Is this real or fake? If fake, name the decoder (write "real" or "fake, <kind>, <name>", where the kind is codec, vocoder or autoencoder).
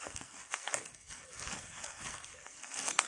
fake, codec, SNAC